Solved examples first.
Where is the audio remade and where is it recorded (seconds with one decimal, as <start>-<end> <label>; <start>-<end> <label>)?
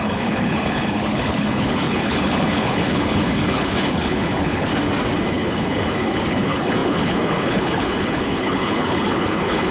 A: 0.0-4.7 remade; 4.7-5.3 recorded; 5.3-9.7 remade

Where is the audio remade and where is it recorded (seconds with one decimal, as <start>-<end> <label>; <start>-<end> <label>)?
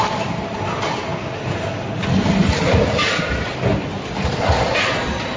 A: 0.0-5.4 recorded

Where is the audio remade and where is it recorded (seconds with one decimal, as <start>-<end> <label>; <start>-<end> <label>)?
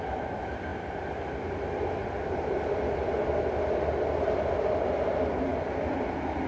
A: 0.0-6.5 recorded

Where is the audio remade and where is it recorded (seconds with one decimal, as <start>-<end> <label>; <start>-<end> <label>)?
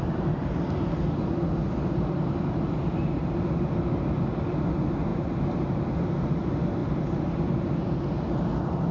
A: 0.0-8.9 recorded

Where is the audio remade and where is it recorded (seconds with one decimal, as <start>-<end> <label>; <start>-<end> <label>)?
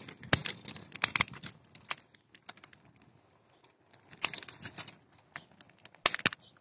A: 0.0-6.6 recorded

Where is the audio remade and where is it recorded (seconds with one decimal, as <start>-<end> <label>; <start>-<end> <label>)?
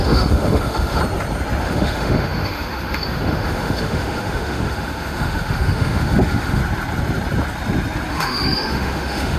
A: 0.0-1.0 remade; 1.0-1.6 recorded; 1.6-6.6 remade; 6.6-8.1 recorded; 8.1-9.4 remade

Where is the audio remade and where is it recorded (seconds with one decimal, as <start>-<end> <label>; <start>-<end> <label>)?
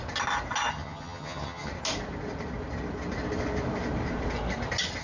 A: 0.0-0.7 recorded; 0.7-1.7 remade; 1.7-5.0 recorded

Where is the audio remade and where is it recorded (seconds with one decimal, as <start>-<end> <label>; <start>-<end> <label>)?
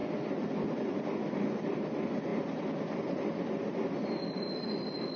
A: 0.0-5.2 recorded